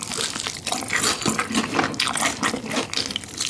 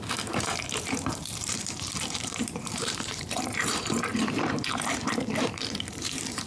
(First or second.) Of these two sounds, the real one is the first